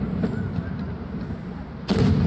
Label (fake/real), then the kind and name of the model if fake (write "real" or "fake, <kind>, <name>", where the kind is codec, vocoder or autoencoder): real